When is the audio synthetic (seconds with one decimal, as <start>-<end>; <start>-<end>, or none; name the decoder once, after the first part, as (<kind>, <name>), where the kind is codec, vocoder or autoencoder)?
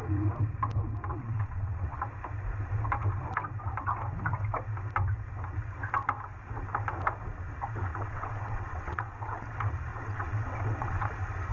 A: 1.1-2.0 (vocoder, WaveNeXt); 7.9-9.5; 9.9-11.1